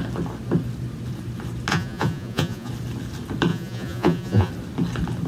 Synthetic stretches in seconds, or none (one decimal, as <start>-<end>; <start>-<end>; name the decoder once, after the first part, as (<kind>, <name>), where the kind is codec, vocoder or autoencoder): 1.7-2.7 (vocoder, Vocos); 3.5-4.5